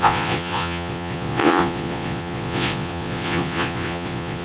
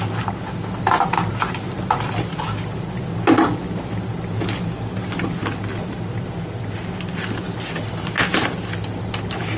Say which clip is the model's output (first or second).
first